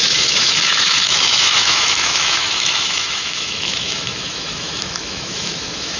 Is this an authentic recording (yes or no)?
no